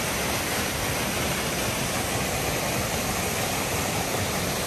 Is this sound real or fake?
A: real